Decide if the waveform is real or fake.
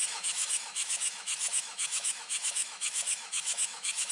fake